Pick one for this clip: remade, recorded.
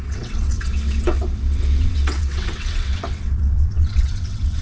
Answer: remade